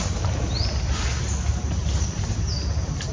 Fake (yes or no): no